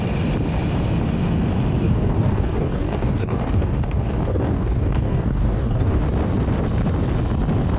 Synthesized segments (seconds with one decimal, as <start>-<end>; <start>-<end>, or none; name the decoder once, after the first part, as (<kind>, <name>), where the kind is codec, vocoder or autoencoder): 1.8-6.0 (codec, DAC)